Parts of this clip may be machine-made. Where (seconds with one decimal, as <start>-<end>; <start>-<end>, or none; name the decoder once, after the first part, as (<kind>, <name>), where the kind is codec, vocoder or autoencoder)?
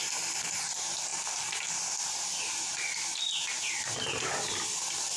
none